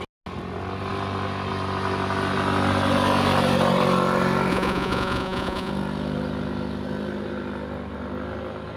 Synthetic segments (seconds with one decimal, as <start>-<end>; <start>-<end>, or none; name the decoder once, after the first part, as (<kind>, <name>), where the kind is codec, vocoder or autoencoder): 4.5-5.7 (vocoder, Vocos)